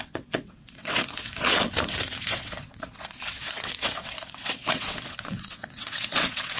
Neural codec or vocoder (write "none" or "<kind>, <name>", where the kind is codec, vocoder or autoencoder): vocoder, WaveNeXt